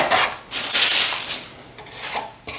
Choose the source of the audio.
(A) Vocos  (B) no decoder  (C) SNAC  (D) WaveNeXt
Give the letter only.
B